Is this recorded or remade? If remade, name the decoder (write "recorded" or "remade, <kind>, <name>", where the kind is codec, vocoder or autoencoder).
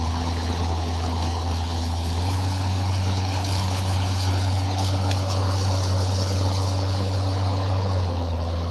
remade, codec, HILCodec